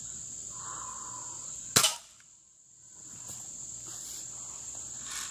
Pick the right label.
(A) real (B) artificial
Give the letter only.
A